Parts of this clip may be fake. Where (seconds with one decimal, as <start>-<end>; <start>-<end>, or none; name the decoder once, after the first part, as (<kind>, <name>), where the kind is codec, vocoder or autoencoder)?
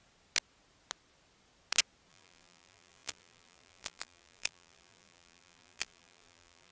2.1-6.7 (vocoder, BigVGAN v2)